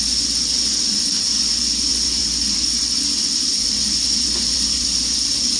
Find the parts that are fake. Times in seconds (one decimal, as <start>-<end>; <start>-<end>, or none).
0.7-1.5; 1.9-5.6